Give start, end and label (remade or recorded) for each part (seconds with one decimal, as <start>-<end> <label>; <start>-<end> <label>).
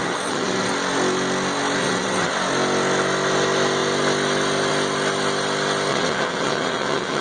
0.0-0.7 remade; 0.7-1.8 recorded; 1.8-2.3 remade; 2.3-5.9 recorded; 5.9-7.2 remade